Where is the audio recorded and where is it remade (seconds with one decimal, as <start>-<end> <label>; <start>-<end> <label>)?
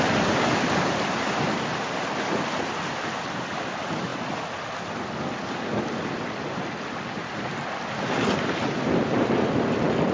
0.0-10.1 recorded